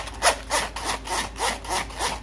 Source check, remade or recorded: recorded